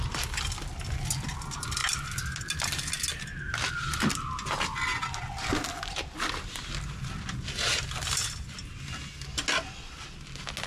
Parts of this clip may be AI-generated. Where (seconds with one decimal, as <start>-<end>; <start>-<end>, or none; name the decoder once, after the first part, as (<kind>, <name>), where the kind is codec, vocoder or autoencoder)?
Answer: none